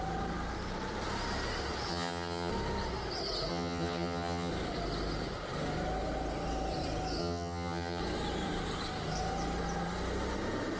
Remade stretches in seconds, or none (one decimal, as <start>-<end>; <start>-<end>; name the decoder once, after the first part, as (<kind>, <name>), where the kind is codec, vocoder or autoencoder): 1.9-2.5 (vocoder, HiFi-GAN); 3.5-4.5; 7.2-8.0